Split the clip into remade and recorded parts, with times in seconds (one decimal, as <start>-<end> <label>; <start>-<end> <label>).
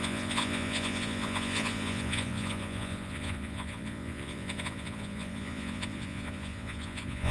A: 0.0-7.3 remade